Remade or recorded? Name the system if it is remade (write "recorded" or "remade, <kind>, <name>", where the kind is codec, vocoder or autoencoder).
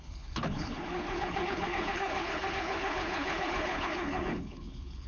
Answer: remade, codec, HILCodec